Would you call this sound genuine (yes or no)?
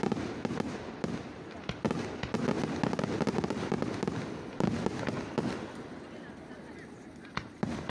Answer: yes